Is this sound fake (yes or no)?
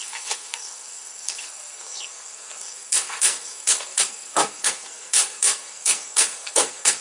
yes